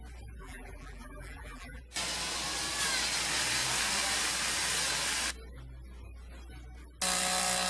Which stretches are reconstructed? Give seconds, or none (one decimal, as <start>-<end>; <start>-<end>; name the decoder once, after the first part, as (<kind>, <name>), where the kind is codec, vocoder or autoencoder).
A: 0.4-1.8 (vocoder, BigVGAN v2)